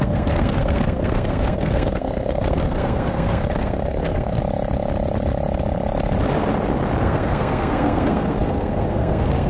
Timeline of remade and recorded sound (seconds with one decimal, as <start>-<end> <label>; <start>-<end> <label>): 0.0-4.4 remade; 4.4-7.0 recorded; 7.0-9.5 remade